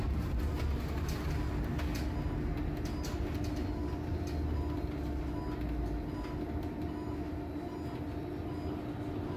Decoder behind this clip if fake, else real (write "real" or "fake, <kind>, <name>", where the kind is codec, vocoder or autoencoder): real